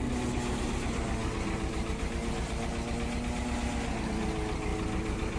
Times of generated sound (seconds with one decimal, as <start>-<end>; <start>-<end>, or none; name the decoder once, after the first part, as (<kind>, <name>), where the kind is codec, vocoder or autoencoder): none